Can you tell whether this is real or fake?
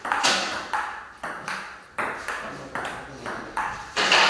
real